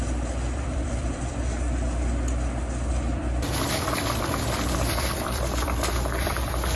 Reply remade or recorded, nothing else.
remade